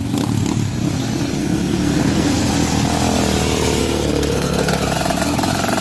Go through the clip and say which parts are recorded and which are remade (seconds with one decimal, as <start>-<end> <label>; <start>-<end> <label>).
0.0-1.4 recorded; 1.4-2.5 remade; 2.5-3.8 recorded; 3.8-4.8 remade; 4.8-5.8 recorded